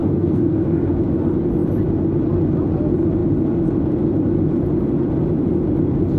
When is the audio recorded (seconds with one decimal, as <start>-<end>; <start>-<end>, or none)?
0.9-6.2